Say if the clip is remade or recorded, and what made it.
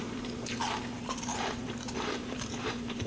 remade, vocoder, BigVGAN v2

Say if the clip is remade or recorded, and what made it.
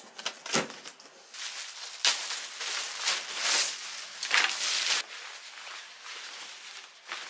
recorded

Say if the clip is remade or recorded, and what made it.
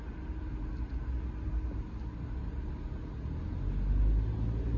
recorded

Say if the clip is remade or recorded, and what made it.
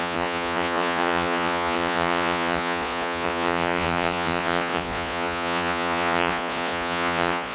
remade, vocoder, Vocos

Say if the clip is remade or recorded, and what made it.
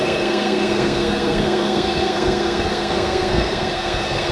remade, codec, SNAC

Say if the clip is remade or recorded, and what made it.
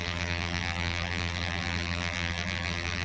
remade, vocoder, BigVGAN v2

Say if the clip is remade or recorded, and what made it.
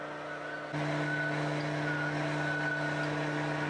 recorded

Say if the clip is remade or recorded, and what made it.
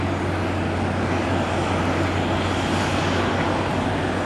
recorded